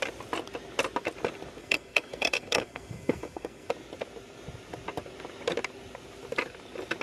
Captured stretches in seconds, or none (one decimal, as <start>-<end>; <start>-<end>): 0.0-1.6; 3.7-7.0